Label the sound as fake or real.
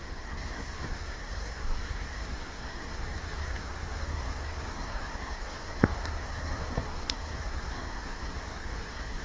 fake